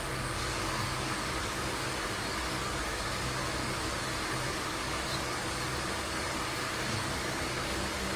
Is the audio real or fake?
fake